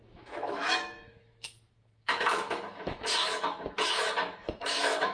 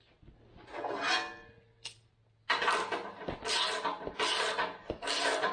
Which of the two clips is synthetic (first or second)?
first